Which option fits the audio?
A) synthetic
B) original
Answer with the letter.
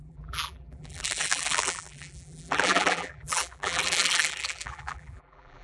A